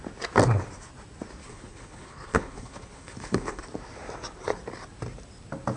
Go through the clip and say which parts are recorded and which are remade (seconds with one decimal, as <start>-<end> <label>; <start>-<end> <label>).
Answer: 0.0-1.4 recorded; 1.4-3.6 remade; 3.6-5.8 recorded